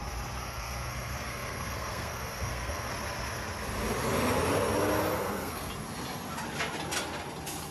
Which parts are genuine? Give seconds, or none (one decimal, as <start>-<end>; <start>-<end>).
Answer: 0.0-0.4; 2.9-5.2; 5.7-7.7